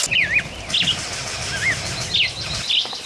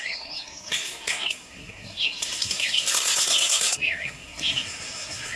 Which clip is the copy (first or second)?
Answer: second